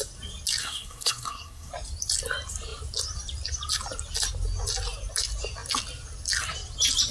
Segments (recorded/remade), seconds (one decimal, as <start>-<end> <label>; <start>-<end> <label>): 0.0-0.6 recorded; 0.6-1.7 remade; 1.7-7.1 recorded